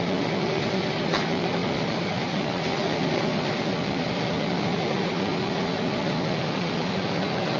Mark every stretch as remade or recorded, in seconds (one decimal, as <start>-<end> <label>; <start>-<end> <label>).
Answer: 0.0-7.6 remade